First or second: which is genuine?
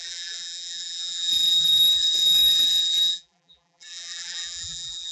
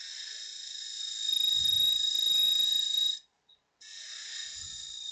second